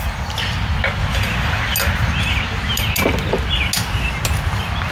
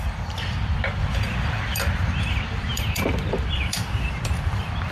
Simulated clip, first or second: second